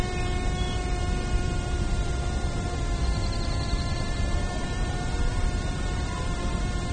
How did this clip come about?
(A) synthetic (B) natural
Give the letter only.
B